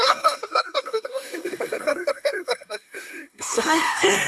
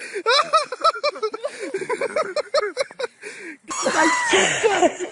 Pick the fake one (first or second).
first